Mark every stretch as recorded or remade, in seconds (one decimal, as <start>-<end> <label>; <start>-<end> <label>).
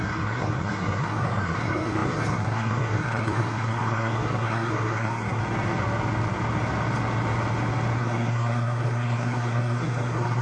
0.0-5.4 remade; 5.4-8.0 recorded; 8.0-10.4 remade